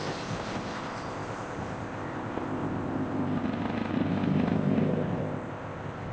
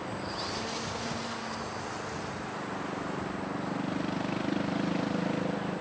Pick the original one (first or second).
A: second